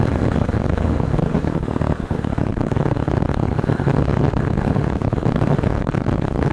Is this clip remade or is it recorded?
remade